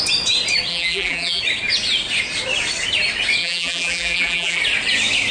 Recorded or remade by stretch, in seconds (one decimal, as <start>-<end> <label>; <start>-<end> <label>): 0.0-0.7 recorded; 0.7-1.4 remade; 1.4-3.4 recorded; 3.4-4.6 remade; 4.6-5.3 recorded